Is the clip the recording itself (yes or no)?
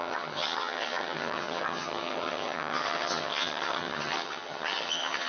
no